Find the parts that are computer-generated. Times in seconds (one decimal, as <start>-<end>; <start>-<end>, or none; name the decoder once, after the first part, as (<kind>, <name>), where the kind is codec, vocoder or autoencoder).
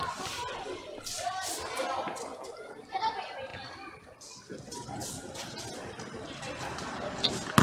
2.3-3.1 (vocoder, BigVGAN v2)